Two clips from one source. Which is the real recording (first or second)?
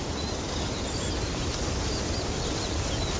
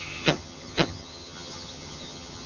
first